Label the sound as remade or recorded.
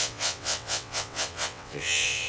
remade